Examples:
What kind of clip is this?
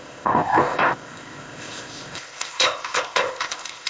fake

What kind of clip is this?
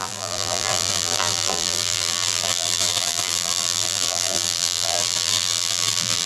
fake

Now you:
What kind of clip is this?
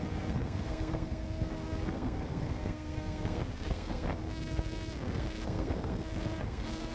fake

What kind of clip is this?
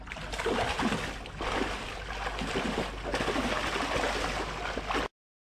real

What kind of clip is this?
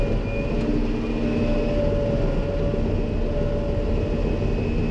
real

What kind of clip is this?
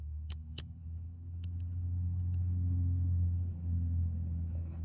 fake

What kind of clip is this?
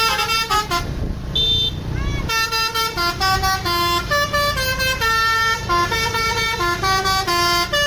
real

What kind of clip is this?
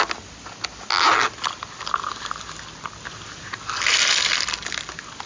real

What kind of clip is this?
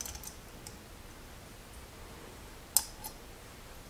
real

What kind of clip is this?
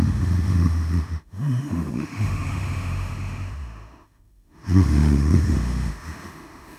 fake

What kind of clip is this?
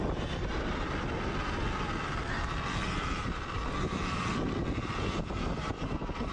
real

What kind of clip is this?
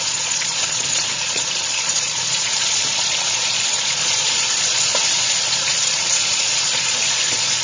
fake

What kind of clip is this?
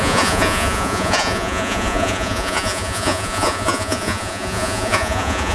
fake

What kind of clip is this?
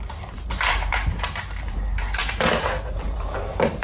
fake